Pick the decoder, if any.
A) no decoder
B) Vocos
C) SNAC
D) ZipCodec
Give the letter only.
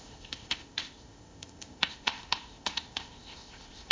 D